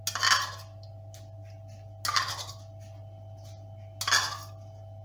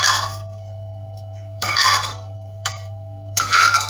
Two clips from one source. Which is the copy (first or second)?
second